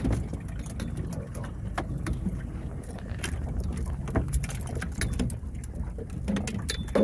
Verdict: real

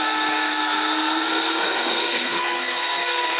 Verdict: fake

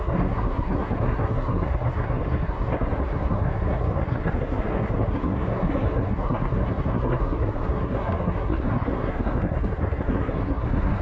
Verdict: fake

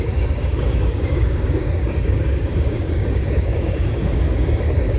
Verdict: fake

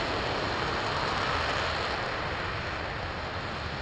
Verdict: real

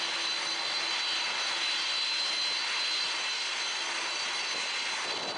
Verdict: real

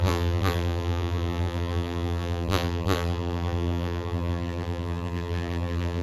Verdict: fake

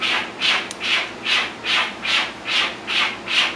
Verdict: fake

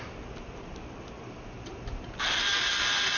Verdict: real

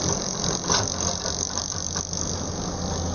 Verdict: real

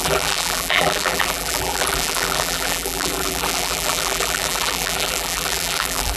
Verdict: fake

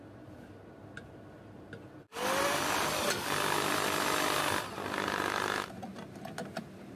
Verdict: real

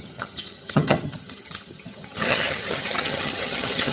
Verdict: fake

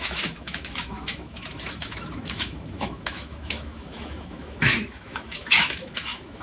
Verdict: fake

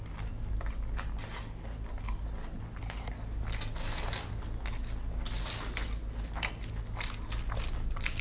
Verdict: real